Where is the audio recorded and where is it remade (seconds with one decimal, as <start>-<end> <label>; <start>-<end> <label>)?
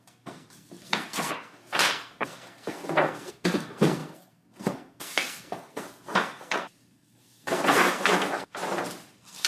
0.0-8.6 remade; 8.6-9.1 recorded; 9.1-9.5 remade